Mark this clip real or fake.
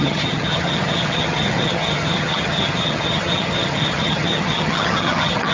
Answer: fake